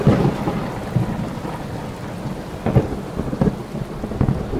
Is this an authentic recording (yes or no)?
yes